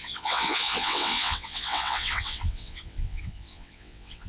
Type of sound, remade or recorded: remade